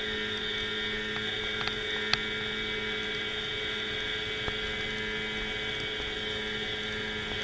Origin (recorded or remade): recorded